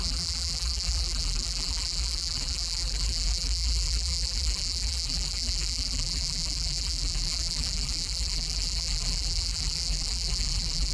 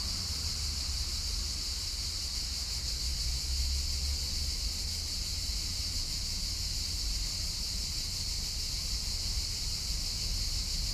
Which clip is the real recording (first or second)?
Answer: second